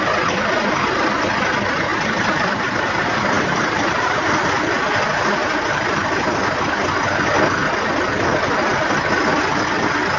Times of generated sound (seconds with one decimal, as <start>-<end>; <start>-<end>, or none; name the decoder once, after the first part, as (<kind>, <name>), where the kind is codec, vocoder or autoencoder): 1.9-4.5 (vocoder, BigVGAN v2); 5.4-6.6